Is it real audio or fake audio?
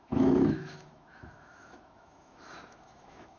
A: fake